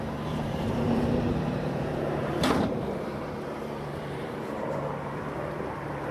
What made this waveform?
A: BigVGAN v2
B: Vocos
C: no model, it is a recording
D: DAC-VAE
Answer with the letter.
A